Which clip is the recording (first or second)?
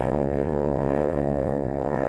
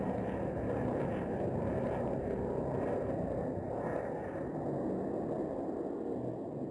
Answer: second